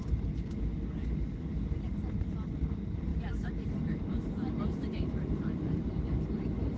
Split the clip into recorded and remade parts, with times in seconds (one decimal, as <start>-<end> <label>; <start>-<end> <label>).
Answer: 0.0-6.8 recorded